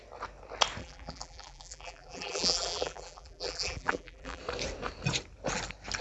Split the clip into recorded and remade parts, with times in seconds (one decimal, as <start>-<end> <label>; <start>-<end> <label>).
0.0-0.8 recorded; 0.8-4.4 remade; 4.4-6.0 recorded

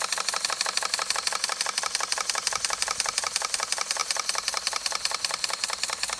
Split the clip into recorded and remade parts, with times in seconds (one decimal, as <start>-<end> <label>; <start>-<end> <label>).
0.0-6.2 recorded

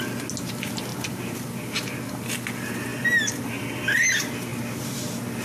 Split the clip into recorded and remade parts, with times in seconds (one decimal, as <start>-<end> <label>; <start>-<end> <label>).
0.0-0.9 recorded; 0.9-1.5 remade; 1.5-5.4 recorded